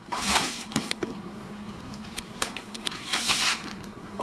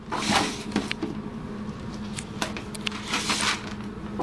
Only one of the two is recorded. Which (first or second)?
second